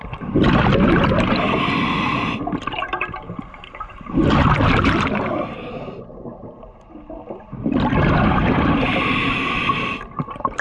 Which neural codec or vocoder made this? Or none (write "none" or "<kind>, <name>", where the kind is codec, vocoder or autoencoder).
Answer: none